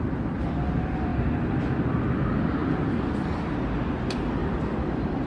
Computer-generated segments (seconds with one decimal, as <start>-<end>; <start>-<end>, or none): 1.1-2.0; 4.4-5.3